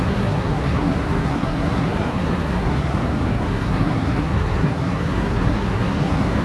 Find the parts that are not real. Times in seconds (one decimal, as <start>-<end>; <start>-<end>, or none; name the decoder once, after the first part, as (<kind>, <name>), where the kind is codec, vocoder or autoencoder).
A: 0.0-6.4 (codec, SNAC)